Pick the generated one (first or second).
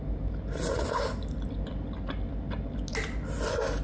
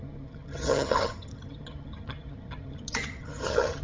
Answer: second